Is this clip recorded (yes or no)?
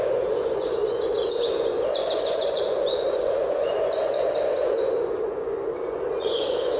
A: no